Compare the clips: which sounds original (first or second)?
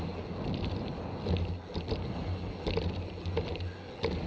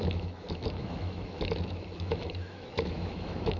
first